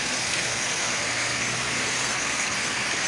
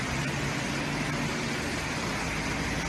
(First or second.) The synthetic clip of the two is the first